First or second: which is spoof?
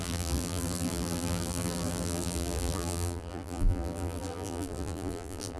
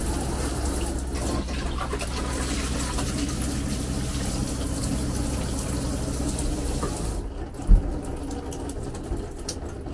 first